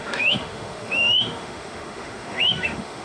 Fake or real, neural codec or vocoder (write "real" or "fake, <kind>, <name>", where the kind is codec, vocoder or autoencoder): fake, autoencoder, DAC-VAE